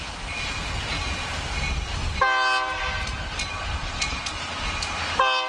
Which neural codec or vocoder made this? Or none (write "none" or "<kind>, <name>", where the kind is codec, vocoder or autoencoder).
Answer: none